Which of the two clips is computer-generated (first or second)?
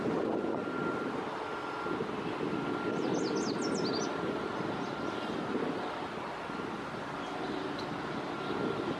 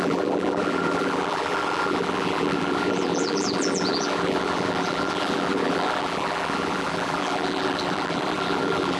second